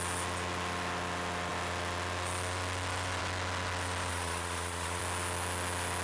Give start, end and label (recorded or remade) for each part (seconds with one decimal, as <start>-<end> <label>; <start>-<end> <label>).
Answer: 0.0-4.1 recorded; 4.1-5.0 remade; 5.0-6.0 recorded